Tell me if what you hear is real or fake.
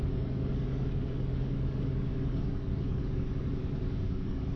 fake